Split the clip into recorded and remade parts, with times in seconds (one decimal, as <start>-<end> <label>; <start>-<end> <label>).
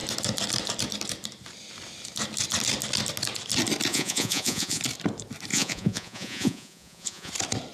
0.0-3.9 recorded; 3.9-4.8 remade; 4.8-5.5 recorded; 5.5-7.3 remade; 7.3-7.7 recorded